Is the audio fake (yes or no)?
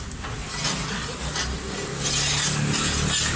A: no